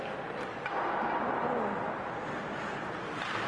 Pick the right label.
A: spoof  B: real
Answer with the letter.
B